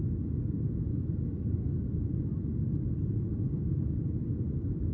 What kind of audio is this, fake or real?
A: real